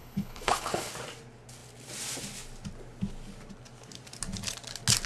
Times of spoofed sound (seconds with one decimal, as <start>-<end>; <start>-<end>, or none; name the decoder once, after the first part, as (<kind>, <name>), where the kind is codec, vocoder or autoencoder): 0.0-0.9 (codec, HILCodec)